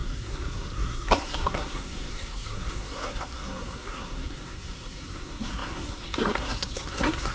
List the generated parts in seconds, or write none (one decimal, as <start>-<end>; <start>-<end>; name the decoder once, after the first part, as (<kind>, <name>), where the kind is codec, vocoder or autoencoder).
0.0-7.3 (codec, SNAC)